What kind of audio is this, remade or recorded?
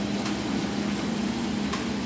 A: recorded